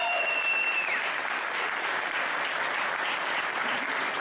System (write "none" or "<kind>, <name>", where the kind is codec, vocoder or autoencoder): vocoder, BigVGAN v2